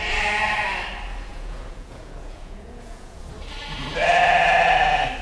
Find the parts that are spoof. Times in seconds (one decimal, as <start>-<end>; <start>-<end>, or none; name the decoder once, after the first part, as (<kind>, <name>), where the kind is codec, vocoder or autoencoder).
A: 1.3-3.2 (vocoder, Vocos)

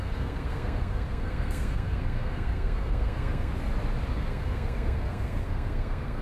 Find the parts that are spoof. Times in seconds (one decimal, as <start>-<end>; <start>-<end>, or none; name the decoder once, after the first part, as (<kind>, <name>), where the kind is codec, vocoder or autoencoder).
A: 0.0-3.5 (codec, SNAC); 4.1-6.2

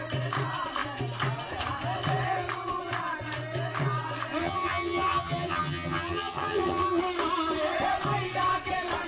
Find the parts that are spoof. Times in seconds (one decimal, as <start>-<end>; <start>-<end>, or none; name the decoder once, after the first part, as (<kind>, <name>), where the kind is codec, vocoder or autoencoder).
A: 4.4-7.0 (vocoder, HiFi-GAN)

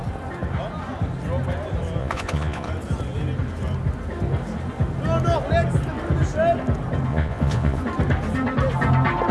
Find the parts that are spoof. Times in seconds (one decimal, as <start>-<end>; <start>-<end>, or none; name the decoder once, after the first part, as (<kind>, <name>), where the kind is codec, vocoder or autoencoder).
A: 2.0-2.7 (vocoder, Vocos); 7.1-7.8

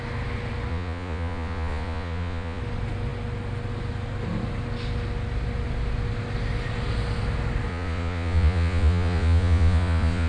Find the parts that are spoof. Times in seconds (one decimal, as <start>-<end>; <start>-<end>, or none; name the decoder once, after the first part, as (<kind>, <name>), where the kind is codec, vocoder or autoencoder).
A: 0.7-2.6 (vocoder, Vocos); 7.7-10.3

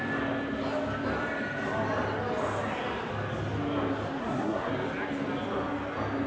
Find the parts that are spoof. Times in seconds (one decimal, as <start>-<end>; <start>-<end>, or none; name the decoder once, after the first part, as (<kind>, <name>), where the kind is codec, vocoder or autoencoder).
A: 4.2-4.7 (codec, SNAC)

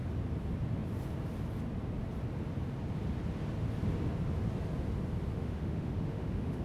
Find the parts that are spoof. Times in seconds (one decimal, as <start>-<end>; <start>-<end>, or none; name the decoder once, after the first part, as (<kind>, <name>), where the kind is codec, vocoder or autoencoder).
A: 5.3-6.6 (autoencoder, DAC-VAE)